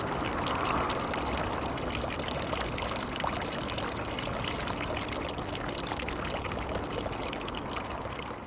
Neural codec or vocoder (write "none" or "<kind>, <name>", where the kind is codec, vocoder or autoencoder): none